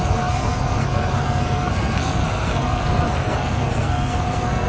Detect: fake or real fake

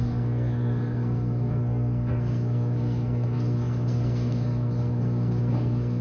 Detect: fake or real fake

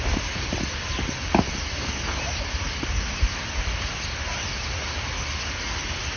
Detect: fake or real real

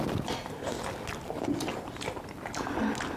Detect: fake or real real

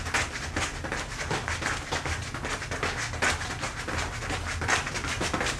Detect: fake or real real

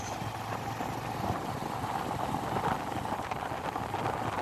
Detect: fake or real real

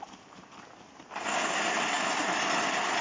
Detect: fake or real real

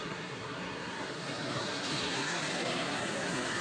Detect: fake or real fake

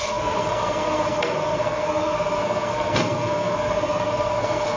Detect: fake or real fake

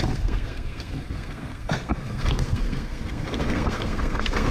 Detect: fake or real fake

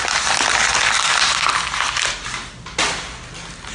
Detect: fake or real real